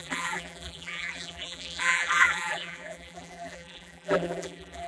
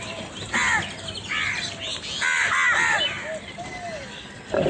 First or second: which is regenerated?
first